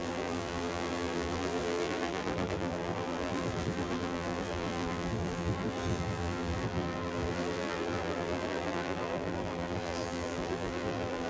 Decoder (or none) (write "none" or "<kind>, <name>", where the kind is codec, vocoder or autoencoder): vocoder, BigVGAN v2